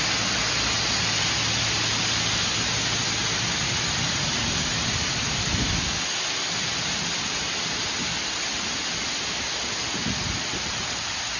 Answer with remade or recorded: recorded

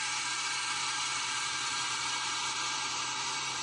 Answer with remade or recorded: remade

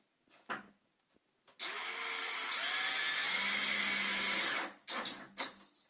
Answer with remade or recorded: recorded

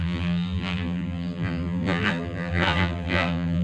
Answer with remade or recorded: remade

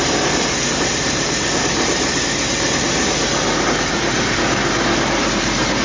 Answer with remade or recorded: remade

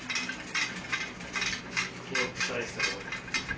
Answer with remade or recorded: recorded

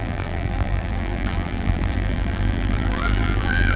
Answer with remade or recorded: remade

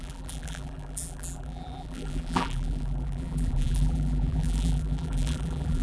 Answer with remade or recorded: remade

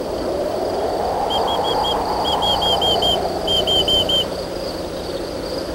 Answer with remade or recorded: remade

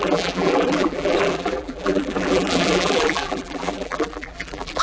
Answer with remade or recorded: remade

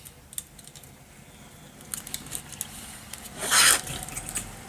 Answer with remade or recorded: recorded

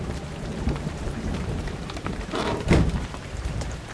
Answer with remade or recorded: remade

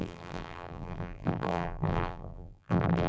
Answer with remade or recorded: remade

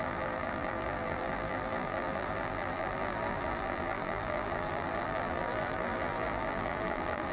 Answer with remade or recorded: remade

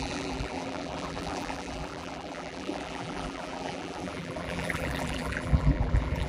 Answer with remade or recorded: remade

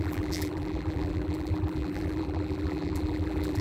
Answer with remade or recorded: remade